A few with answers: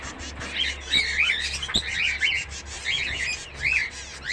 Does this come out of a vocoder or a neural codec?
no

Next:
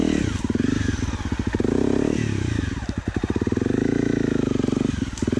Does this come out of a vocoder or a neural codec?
no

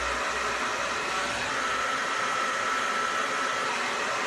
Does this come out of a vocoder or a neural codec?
no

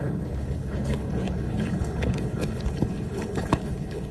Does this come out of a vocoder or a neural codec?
yes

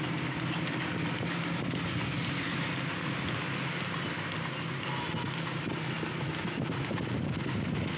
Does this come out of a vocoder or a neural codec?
no